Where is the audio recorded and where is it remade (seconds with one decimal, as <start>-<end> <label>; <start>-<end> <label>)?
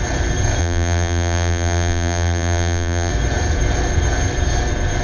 0.0-0.6 recorded; 0.6-3.1 remade; 3.1-5.0 recorded